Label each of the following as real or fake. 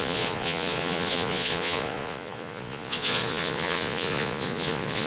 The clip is fake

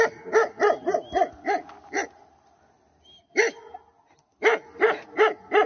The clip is real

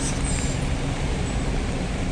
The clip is real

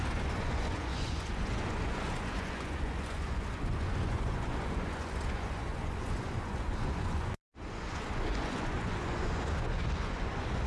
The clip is fake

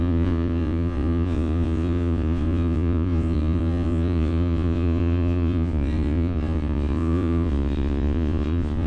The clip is fake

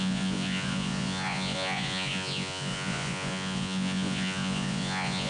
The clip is fake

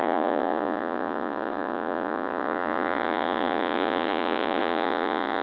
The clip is fake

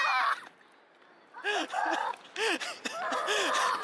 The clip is real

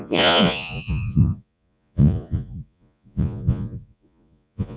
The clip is fake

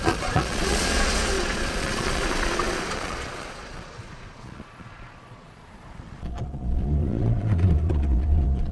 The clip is fake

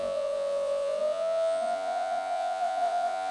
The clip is fake